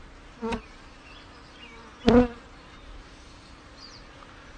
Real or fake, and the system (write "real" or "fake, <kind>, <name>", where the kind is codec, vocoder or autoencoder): real